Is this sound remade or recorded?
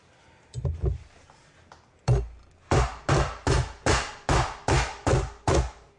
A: recorded